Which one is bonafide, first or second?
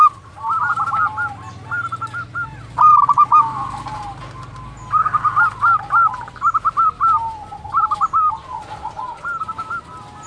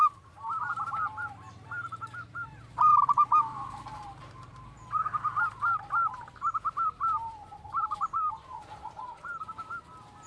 first